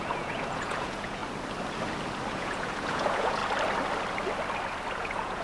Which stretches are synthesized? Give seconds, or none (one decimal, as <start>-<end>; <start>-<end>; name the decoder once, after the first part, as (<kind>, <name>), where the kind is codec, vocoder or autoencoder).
0.0-1.2 (vocoder, Vocos); 2.3-3.4; 4.9-5.4